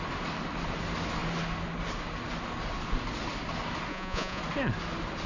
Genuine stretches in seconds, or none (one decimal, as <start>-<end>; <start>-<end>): 0.0-3.9; 4.4-5.3

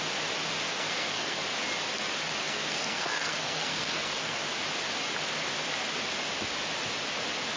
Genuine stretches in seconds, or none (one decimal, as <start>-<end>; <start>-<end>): 0.0-0.7; 1.4-2.4; 4.4-7.6

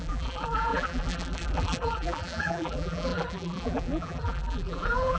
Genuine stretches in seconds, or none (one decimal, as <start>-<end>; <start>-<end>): none

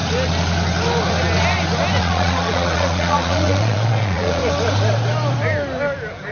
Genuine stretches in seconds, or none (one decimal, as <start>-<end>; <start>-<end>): 0.0-2.0; 4.4-6.3